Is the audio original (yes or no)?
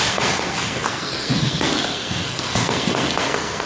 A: no